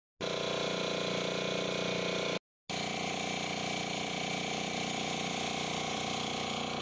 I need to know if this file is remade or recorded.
recorded